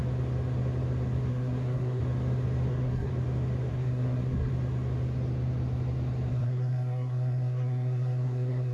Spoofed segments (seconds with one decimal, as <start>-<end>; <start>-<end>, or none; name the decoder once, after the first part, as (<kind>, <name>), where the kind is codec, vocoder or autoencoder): 1.3-2.0 (codec, SNAC); 2.7-3.1; 3.7-4.5; 6.3-8.7